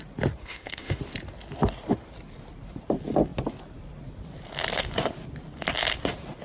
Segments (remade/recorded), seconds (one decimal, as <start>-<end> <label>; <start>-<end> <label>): 0.0-0.4 recorded; 0.4-1.0 remade; 1.0-6.4 recorded